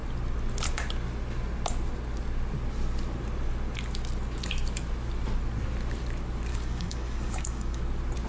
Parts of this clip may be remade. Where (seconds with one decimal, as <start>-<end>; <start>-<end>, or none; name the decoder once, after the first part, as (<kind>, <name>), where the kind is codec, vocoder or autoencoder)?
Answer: 6.5-7.8 (codec, DAC)